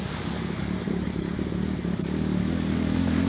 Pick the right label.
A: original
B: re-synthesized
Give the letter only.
B